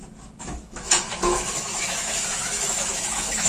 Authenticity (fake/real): fake